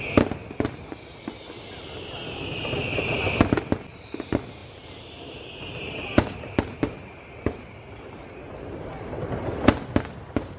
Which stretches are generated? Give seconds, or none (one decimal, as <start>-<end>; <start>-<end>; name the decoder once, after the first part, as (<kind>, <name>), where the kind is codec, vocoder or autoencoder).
none